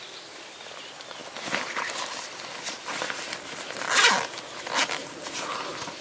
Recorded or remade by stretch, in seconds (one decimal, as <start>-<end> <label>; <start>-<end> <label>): 0.0-6.0 recorded

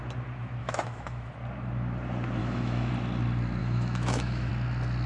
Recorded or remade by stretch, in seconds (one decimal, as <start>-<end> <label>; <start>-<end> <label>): 0.0-0.6 recorded; 0.6-1.3 remade; 1.3-2.4 recorded; 2.4-2.9 remade; 2.9-3.6 recorded; 3.6-4.5 remade; 4.5-5.1 recorded

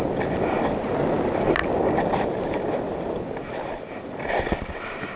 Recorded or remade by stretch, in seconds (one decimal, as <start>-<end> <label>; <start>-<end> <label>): 0.0-5.2 recorded

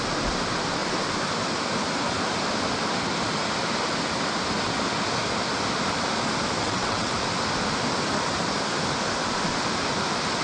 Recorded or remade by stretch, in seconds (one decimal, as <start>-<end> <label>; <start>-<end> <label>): 0.0-6.6 recorded; 6.6-7.1 remade; 7.1-10.4 recorded

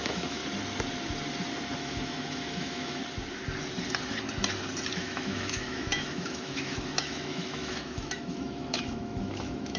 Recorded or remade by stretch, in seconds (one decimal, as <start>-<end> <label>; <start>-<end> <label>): 0.0-0.4 remade; 0.4-1.8 recorded; 1.8-3.0 remade; 3.0-4.9 recorded; 4.9-9.8 remade

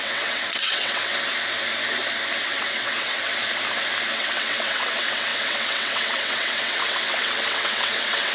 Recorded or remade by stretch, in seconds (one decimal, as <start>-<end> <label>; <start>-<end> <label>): 0.0-1.1 remade; 1.1-2.4 recorded; 2.4-3.3 remade; 3.3-4.1 recorded; 4.1-8.3 remade

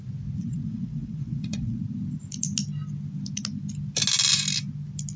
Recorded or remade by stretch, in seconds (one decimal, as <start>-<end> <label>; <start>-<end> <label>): 0.0-0.4 recorded; 0.4-1.8 remade; 1.8-5.2 recorded

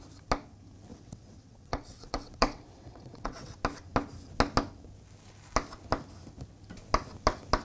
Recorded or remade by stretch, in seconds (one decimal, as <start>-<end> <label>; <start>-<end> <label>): 0.0-0.9 recorded; 0.9-3.5 remade; 3.5-7.6 recorded